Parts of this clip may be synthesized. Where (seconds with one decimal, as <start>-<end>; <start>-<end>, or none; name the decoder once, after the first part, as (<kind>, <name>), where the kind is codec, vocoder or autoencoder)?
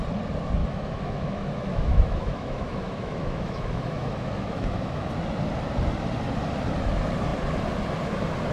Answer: 0.6-5.1 (autoencoder, DAC-VAE)